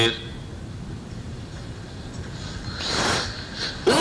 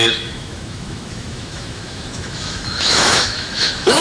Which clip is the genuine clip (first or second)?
first